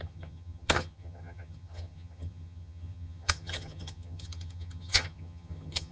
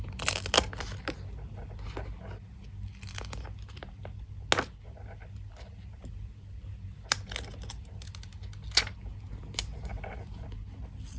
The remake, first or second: first